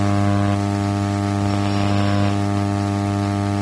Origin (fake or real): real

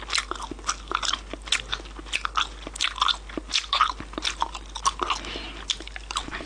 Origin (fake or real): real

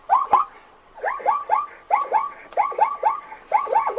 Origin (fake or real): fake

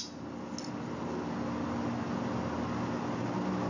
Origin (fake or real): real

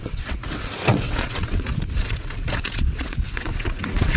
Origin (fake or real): fake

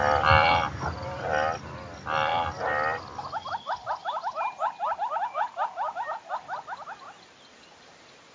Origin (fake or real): real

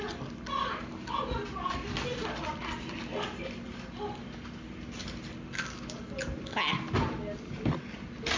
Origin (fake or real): real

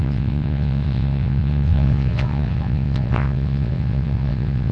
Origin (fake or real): fake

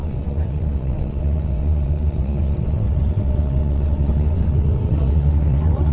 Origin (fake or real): fake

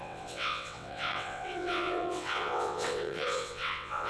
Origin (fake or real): fake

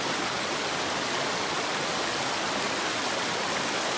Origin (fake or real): real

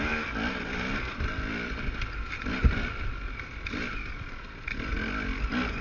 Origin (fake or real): real